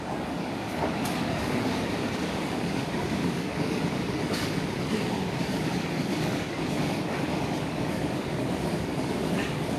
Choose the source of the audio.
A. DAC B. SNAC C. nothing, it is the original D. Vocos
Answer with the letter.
A